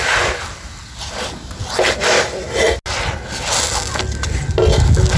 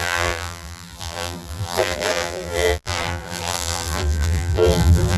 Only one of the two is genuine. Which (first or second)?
first